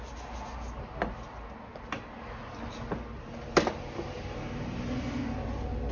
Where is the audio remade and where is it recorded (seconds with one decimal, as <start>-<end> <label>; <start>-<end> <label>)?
0.0-5.9 recorded